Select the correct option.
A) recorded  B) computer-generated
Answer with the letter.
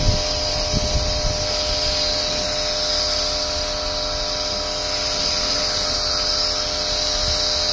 A